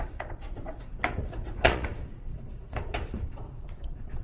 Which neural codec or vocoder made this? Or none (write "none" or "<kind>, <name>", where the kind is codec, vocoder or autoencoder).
vocoder, Vocos